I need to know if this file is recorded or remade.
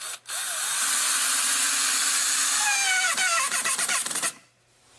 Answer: recorded